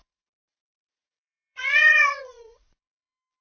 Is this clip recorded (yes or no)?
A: no